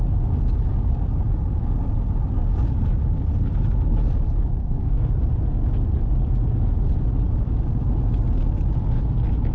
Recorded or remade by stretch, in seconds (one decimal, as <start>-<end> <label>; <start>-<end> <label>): 0.0-4.6 recorded; 4.6-5.1 remade; 5.1-9.5 recorded